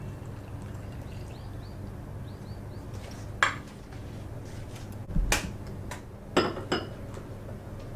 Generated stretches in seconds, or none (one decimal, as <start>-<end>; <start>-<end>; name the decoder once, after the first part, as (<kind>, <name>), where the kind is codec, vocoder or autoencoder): none